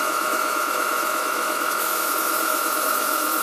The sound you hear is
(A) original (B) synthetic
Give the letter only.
B